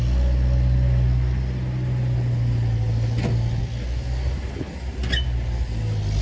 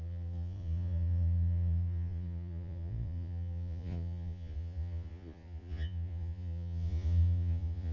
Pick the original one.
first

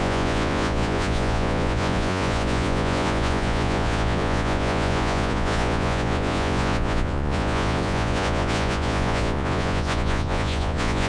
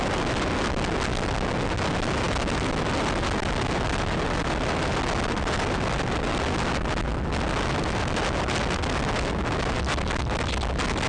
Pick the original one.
second